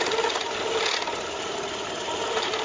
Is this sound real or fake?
real